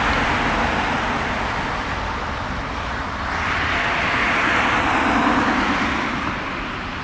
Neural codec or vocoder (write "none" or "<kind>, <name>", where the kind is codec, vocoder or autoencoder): none